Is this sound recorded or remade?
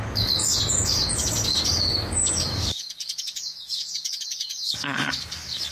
remade